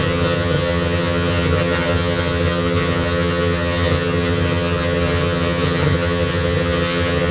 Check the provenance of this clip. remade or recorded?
remade